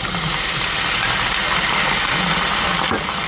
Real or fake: real